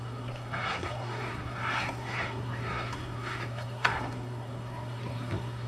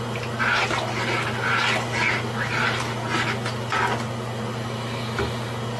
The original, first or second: second